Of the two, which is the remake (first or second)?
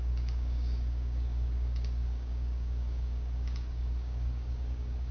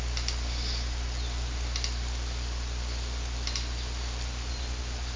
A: first